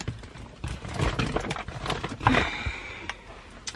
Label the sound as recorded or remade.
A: recorded